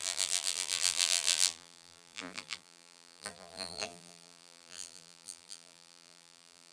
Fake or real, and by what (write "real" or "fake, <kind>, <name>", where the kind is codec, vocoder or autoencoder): fake, vocoder, BigVGAN v2